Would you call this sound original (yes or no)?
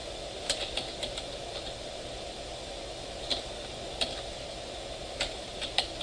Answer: yes